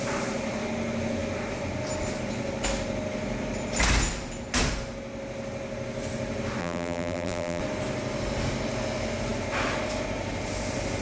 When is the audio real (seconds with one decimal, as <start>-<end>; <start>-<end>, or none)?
0.0-6.6; 7.6-11.0